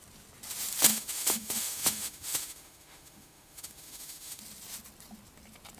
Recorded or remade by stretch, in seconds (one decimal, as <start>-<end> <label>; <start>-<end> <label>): 0.0-0.9 recorded; 0.9-4.4 remade; 4.4-5.8 recorded